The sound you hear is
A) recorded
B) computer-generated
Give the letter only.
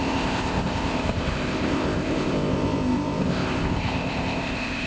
B